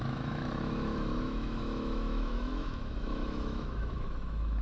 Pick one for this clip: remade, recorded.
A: remade